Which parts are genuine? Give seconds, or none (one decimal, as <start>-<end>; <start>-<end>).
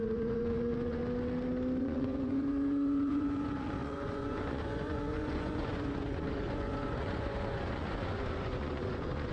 1.0-1.8